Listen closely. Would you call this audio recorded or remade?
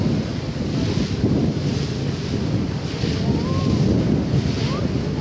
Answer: recorded